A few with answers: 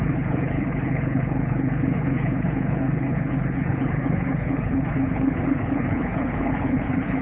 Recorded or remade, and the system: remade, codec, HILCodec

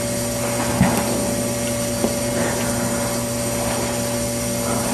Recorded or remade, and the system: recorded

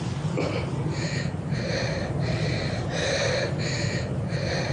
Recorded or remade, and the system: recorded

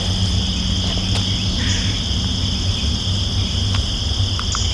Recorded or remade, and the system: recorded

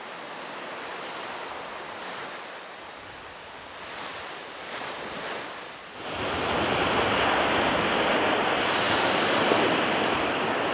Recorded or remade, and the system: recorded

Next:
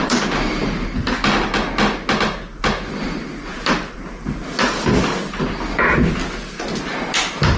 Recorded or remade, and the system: recorded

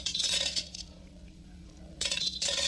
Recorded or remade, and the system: remade, vocoder, Vocos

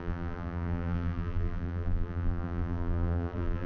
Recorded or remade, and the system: remade, vocoder, BigVGAN v2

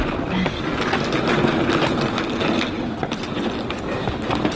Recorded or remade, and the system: recorded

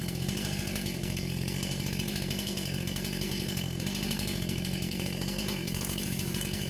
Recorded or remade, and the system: remade, codec, SNAC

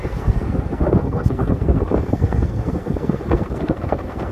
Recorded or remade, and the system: remade, codec, SNAC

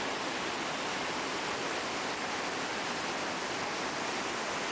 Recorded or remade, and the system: recorded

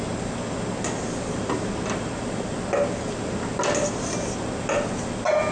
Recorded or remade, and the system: recorded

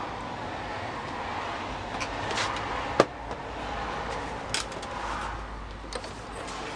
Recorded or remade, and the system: recorded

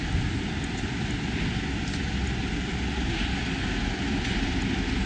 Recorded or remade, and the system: recorded